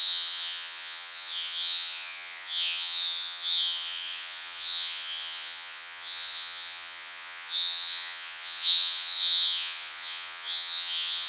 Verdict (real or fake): fake